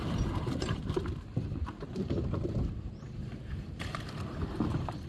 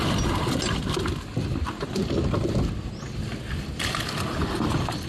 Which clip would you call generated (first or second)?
first